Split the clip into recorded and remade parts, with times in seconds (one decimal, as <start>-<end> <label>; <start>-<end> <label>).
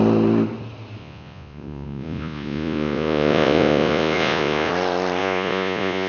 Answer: 0.0-1.0 recorded; 1.0-4.7 remade; 4.7-5.2 recorded; 5.2-6.1 remade